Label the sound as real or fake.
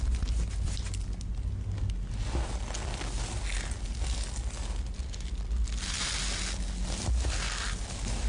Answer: real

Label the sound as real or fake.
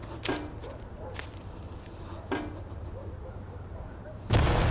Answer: real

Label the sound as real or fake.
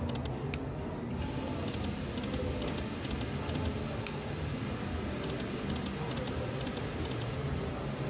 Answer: real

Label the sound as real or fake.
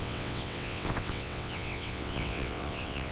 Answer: fake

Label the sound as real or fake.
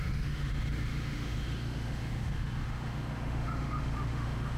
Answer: fake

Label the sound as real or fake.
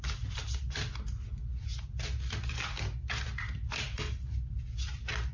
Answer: real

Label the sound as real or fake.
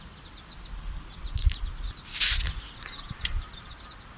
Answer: real